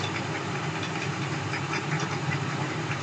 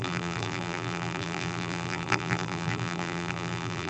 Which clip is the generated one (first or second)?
second